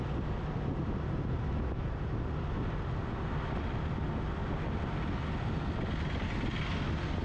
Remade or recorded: recorded